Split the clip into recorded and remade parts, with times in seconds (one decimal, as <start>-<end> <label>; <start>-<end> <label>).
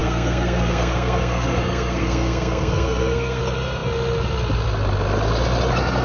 0.0-3.4 remade; 3.4-6.0 recorded